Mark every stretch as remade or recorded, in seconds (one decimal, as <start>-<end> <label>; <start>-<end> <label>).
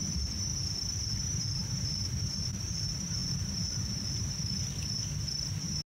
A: 0.0-1.6 recorded; 1.6-2.7 remade; 2.7-5.9 recorded